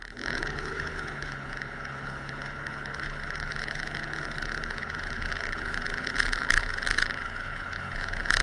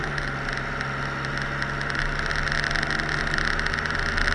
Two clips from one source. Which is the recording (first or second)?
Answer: second